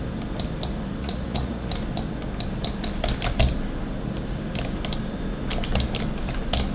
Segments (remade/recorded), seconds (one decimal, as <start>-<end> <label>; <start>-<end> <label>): 0.0-1.0 recorded; 1.0-1.7 remade; 1.7-6.7 recorded